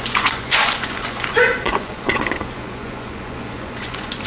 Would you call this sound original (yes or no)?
no